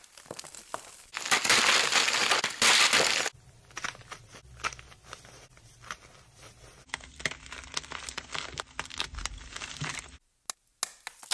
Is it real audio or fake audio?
real